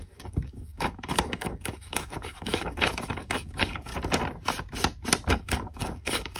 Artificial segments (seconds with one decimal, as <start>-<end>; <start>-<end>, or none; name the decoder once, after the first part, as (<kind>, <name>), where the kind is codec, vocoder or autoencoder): 0.0-3.9 (codec, DAC); 5.3-6.4